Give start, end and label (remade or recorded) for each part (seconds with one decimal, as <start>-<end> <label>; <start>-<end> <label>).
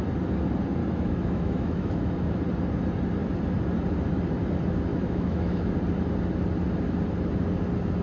0.0-0.8 recorded; 0.8-2.4 remade; 2.4-4.9 recorded; 4.9-5.7 remade; 5.7-8.0 recorded